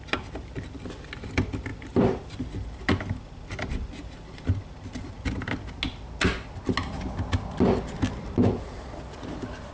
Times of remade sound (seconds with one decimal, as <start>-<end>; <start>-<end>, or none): none